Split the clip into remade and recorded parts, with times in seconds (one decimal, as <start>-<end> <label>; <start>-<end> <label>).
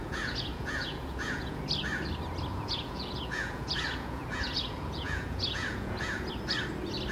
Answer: 0.0-1.6 remade; 1.6-2.5 recorded; 2.5-6.3 remade; 6.3-7.1 recorded